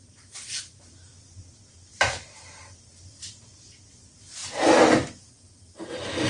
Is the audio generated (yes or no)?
no